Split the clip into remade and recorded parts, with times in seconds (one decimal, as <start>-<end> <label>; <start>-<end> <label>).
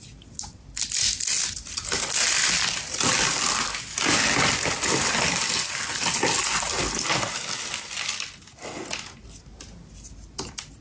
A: 0.0-10.8 recorded